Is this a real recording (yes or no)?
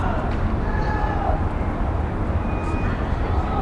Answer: yes